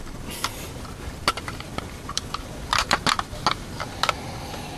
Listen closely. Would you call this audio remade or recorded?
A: recorded